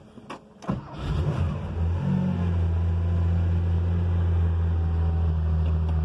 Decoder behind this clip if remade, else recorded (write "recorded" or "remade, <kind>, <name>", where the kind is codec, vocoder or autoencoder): recorded